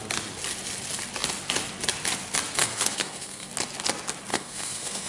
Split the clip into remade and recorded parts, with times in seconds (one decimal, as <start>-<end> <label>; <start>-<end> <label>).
0.0-2.6 recorded; 2.6-3.5 remade; 3.5-4.3 recorded; 4.3-5.1 remade